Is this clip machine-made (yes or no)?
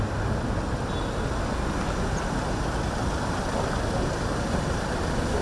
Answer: no